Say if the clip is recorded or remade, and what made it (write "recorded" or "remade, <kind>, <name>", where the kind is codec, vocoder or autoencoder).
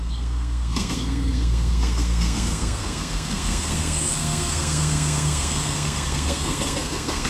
remade, codec, SNAC